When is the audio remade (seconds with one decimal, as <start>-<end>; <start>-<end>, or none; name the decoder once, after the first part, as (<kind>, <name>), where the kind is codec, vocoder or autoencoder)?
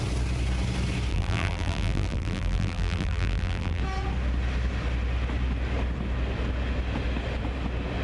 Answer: 1.1-3.8 (vocoder, BigVGAN v2)